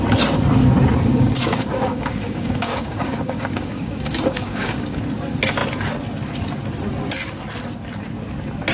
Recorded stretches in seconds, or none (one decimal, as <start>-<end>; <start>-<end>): 0.0-1.1; 5.0-8.7